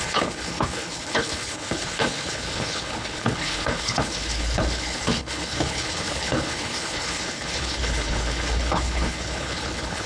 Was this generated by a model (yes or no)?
yes